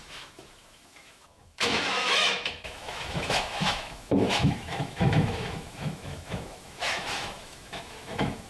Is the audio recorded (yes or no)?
no